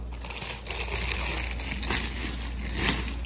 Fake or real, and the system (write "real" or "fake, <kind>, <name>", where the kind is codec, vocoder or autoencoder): real